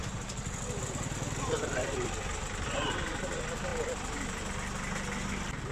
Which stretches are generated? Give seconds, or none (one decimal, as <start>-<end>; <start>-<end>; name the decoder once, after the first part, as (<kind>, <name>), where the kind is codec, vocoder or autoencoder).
0.0-2.7 (vocoder, BigVGAN v2); 3.7-4.5